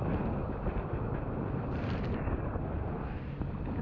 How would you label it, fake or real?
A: real